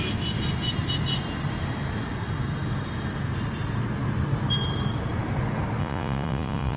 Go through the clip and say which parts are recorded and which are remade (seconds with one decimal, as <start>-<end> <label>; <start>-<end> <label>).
0.0-5.8 recorded; 5.8-6.8 remade